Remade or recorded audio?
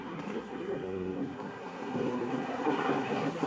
remade